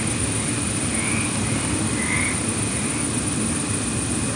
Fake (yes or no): no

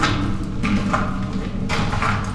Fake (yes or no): no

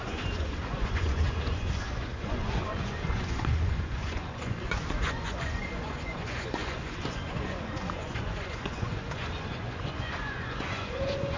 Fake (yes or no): yes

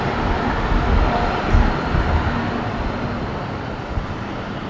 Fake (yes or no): no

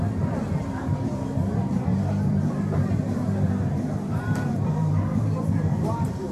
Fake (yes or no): yes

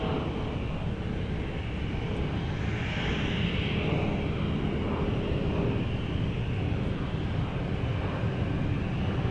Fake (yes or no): no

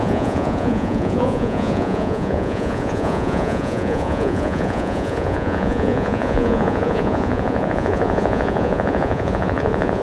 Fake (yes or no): yes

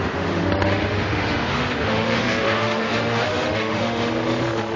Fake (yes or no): yes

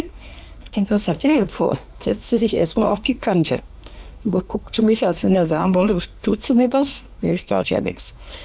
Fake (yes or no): yes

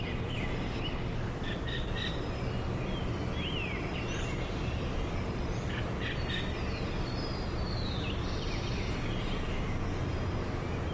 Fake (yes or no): no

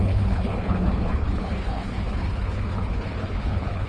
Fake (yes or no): yes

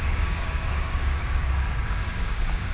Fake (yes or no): yes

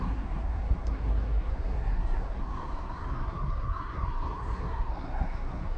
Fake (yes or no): yes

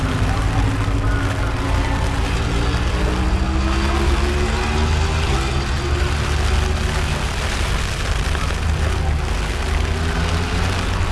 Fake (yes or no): no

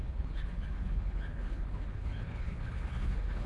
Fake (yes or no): yes